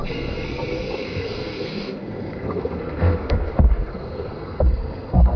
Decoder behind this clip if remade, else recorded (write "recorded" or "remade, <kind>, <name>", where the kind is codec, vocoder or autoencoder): remade, codec, SNAC